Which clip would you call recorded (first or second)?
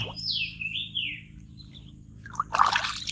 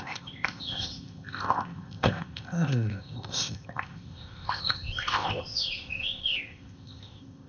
first